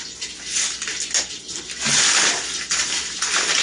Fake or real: real